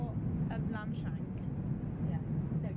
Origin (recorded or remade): recorded